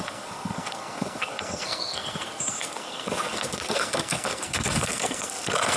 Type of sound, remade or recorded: remade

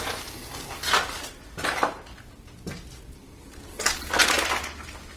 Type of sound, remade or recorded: recorded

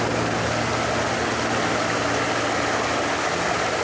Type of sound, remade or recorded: recorded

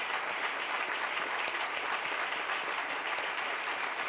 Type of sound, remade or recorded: recorded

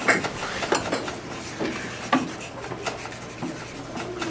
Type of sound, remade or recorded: recorded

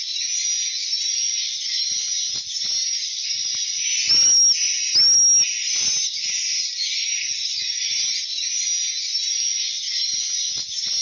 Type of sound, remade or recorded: recorded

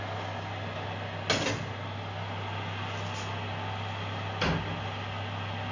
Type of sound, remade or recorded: recorded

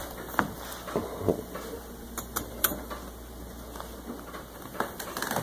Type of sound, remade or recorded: recorded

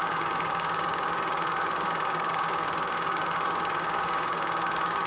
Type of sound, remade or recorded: remade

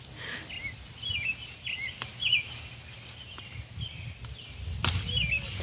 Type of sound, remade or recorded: recorded